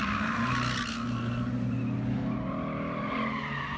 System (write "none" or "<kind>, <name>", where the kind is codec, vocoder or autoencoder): none